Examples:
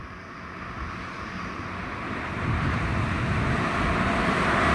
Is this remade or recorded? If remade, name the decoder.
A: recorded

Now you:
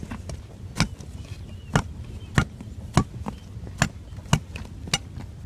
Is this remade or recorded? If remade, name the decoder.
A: recorded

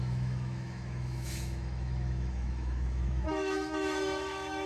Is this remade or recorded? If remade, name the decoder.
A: remade, autoencoder, DAC-VAE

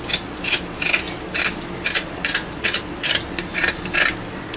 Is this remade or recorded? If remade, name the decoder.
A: recorded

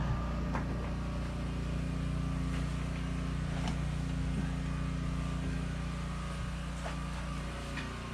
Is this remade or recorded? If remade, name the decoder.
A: recorded